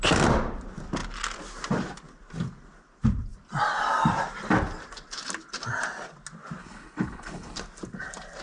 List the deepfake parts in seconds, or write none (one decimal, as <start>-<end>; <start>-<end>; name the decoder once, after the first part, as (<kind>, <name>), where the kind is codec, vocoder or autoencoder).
6.6-7.6 (codec, HILCodec)